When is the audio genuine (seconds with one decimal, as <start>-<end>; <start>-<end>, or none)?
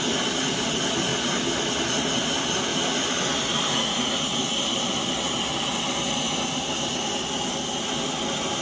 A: 0.0-8.6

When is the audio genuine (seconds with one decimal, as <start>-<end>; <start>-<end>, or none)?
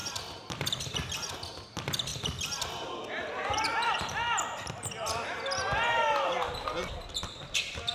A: 1.3-2.1; 4.0-7.9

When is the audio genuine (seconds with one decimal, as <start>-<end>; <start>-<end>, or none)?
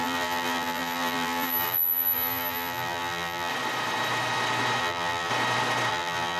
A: 3.5-4.8; 5.3-5.9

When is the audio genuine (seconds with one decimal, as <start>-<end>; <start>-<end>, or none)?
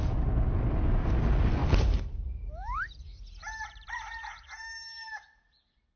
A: 0.0-1.6; 5.2-6.0